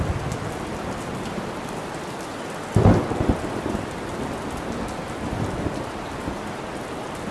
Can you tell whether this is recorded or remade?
recorded